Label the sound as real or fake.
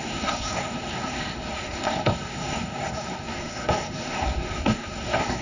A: fake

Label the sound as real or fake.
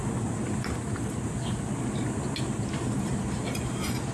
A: real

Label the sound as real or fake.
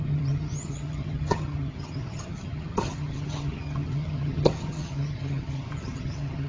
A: fake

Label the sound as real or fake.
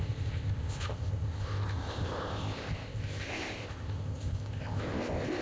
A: fake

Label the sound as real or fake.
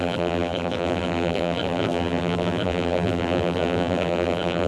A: fake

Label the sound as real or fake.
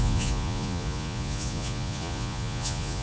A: fake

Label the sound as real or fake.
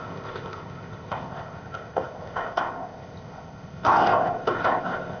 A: fake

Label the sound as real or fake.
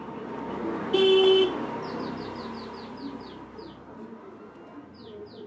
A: real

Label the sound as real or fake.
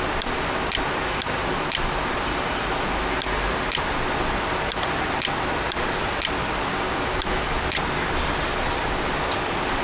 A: real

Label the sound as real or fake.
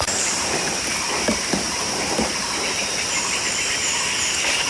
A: fake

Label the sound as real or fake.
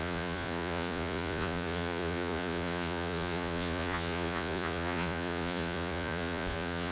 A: fake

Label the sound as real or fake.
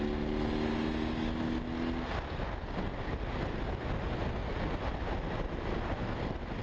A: real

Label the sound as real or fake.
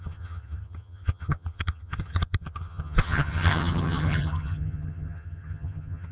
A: fake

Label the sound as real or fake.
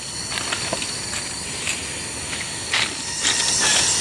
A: real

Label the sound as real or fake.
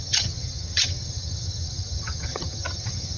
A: fake